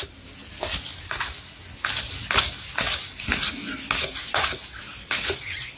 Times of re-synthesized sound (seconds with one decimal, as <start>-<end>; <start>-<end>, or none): none